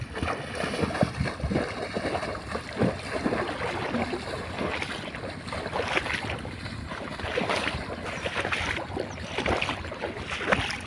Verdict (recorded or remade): recorded